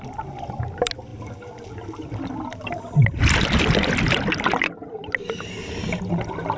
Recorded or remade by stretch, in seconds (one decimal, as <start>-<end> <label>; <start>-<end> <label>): 0.0-6.6 recorded